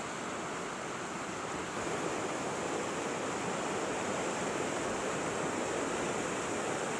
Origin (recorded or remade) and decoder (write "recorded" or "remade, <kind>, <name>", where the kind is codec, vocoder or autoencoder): recorded